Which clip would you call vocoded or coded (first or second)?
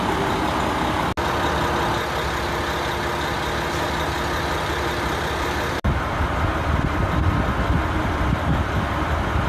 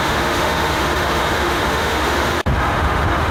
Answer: second